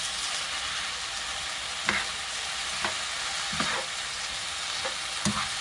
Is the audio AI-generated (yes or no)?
no